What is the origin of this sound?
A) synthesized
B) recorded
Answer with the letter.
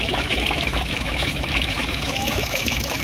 A